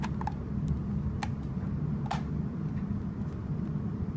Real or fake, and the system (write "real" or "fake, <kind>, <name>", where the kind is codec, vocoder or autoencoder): real